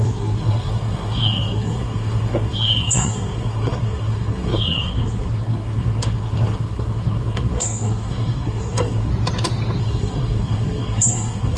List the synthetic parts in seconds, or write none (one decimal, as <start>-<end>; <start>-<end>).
0.0-9.1; 9.8-11.6